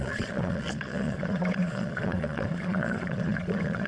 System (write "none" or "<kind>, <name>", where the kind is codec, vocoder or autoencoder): vocoder, Vocos